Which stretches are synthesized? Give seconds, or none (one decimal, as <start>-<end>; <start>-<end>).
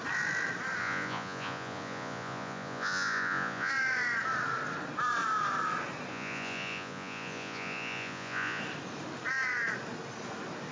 0.8-3.7; 6.1-8.6